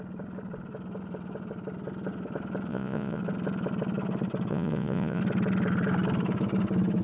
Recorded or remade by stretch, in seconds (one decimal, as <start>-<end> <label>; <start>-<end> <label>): 0.0-2.7 recorded; 2.7-3.2 remade; 3.2-4.5 recorded; 4.5-5.2 remade; 5.2-7.0 recorded